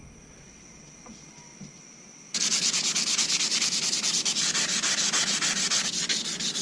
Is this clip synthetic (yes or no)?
no